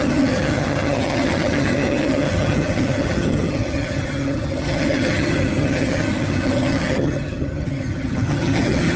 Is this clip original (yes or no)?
no